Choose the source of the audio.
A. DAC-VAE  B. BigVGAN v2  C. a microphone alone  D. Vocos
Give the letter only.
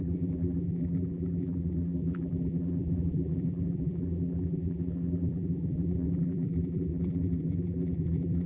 B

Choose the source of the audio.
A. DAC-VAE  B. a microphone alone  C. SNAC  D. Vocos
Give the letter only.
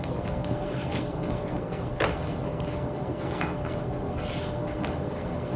C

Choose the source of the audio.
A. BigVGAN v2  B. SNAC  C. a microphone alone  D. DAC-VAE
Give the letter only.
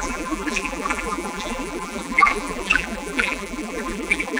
A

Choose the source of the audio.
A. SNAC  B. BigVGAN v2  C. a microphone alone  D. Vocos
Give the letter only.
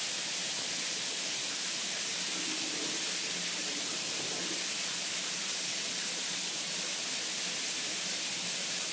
C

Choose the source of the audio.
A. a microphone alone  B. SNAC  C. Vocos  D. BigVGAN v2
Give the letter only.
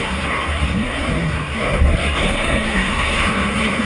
B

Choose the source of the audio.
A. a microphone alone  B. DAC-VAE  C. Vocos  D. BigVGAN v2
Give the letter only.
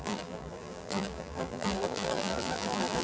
D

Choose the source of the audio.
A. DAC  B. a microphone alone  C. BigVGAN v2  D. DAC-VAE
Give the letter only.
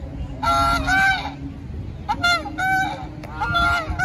B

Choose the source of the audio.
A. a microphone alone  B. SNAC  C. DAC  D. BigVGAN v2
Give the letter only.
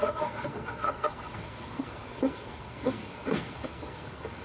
B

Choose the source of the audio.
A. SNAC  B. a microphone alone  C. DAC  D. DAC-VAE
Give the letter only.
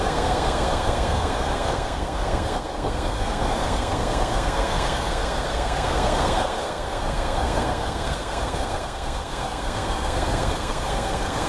A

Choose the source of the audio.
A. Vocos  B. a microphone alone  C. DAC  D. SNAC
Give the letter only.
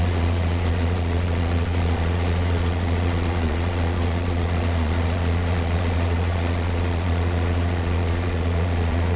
A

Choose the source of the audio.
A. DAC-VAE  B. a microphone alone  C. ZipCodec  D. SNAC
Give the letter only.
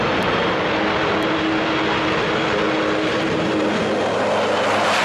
B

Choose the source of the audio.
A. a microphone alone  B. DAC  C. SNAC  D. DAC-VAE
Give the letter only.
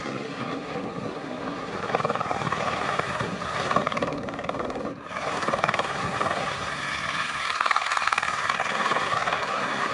C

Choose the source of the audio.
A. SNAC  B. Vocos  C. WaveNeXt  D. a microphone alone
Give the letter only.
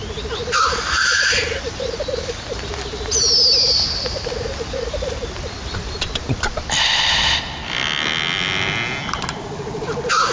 D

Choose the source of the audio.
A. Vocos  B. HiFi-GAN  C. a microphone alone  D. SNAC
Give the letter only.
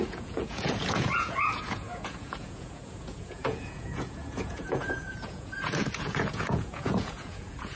A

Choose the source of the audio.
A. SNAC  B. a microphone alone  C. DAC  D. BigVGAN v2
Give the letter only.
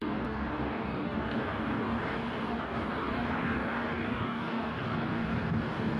C